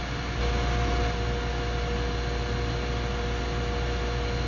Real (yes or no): yes